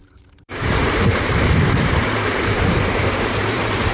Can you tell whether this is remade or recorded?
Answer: remade